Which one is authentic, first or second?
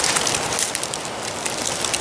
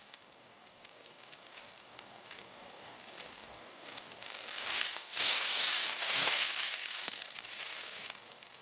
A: first